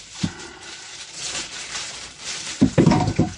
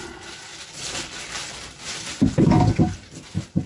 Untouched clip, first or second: second